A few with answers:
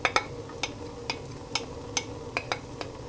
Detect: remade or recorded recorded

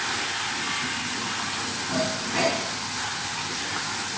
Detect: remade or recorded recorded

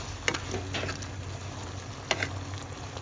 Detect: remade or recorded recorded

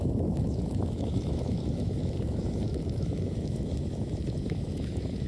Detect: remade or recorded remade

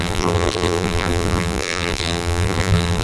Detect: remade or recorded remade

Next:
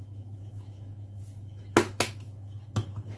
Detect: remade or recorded remade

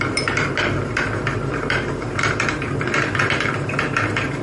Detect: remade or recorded remade